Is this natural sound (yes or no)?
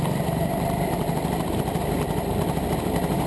no